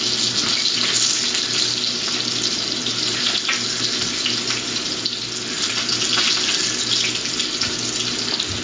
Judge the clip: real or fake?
real